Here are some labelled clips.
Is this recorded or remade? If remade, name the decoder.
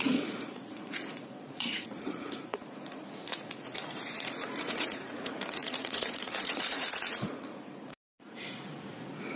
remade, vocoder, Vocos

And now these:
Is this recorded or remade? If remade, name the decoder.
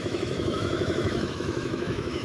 remade, autoencoder, DAC-VAE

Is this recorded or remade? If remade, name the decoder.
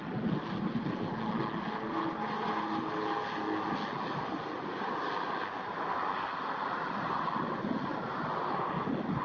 recorded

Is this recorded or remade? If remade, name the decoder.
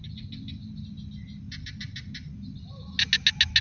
recorded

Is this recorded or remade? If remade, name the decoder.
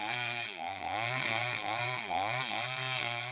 remade, vocoder, WaveNeXt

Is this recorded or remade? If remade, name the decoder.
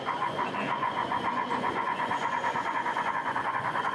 remade, vocoder, Vocos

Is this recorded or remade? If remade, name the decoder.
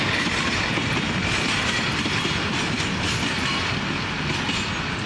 recorded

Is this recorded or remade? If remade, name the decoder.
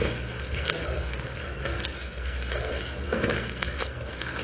remade, codec, SNAC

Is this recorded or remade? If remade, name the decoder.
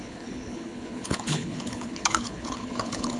remade, codec, HILCodec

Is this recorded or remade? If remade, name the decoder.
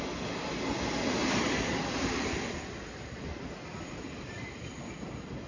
recorded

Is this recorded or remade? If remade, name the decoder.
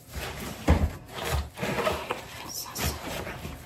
recorded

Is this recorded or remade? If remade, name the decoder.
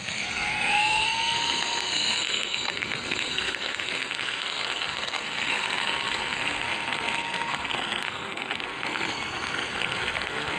remade, codec, SNAC